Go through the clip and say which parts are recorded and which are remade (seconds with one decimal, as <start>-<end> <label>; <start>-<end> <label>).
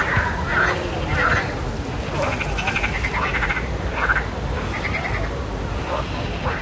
0.0-6.6 recorded